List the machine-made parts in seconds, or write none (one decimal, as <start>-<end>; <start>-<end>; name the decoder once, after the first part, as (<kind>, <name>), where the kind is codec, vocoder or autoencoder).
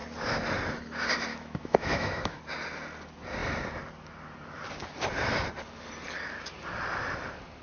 1.3-2.4 (autoencoder, DAC-VAE)